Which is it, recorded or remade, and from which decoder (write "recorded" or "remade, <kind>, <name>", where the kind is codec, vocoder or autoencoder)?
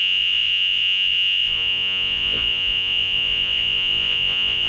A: remade, vocoder, Vocos